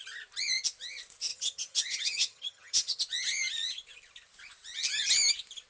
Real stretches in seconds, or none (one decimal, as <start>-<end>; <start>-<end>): 0.0-1.3; 3.0-5.7